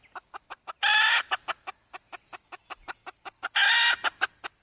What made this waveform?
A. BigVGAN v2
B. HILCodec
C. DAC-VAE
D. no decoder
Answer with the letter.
D